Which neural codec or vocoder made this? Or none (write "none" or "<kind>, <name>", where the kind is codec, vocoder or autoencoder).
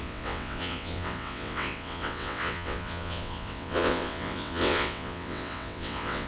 vocoder, WaveNeXt